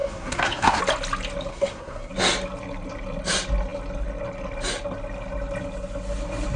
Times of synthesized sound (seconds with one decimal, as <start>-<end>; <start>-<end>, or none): 0.0-0.8; 1.5-2.1